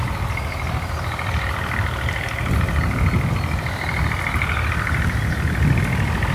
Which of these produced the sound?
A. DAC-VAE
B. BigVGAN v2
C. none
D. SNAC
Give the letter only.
C